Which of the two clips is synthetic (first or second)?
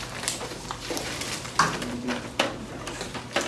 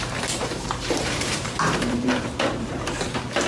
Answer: second